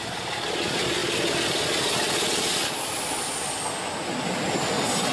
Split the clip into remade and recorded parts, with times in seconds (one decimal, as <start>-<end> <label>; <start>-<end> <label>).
0.0-5.1 recorded